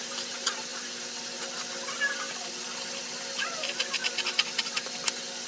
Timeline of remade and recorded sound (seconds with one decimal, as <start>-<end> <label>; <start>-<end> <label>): 0.0-5.5 recorded